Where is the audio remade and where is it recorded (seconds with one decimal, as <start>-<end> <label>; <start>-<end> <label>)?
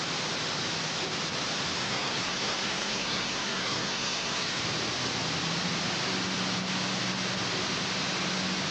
0.0-1.8 recorded; 1.8-4.6 remade; 4.6-8.7 recorded